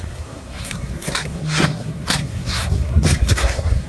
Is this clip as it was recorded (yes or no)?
no